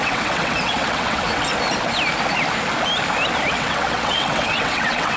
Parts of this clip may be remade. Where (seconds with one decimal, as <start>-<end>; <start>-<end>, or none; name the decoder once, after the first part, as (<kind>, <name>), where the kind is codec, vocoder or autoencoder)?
0.0-1.5 (vocoder, WaveNeXt); 3.5-5.2